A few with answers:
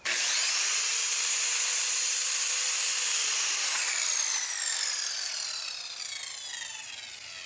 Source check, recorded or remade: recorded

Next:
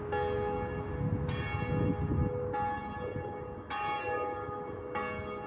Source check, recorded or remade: recorded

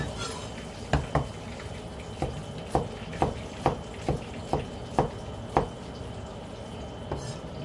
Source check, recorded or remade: recorded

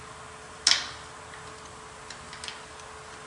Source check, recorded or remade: recorded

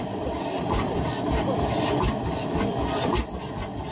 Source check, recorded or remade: remade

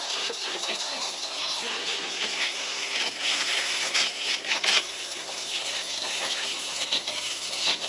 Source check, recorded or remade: remade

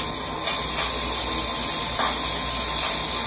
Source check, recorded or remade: recorded